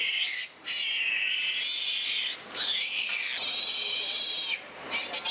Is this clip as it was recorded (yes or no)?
yes